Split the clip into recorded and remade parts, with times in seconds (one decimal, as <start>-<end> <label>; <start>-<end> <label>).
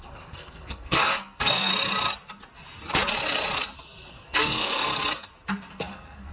0.0-1.7 remade; 1.7-4.1 recorded; 4.1-4.9 remade; 4.9-5.7 recorded; 5.7-6.3 remade